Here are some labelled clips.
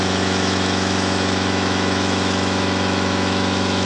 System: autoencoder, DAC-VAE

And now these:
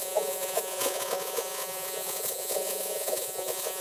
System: vocoder, Vocos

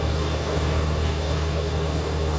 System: codec, DAC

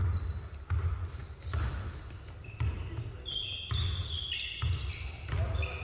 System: none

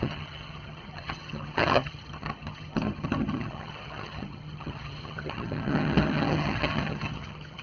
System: vocoder, HiFi-GAN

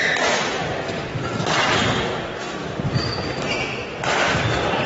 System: none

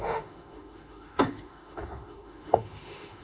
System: autoencoder, DAC-VAE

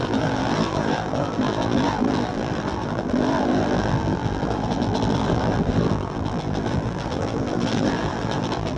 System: vocoder, BigVGAN v2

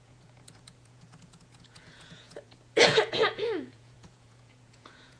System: vocoder, Vocos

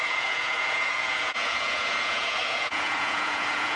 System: vocoder, Vocos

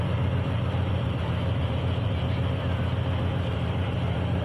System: vocoder, BigVGAN v2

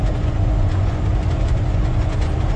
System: vocoder, Vocos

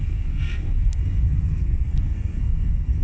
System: codec, SNAC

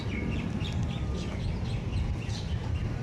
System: none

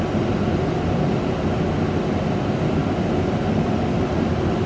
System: none